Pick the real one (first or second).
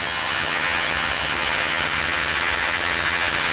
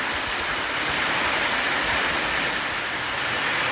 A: second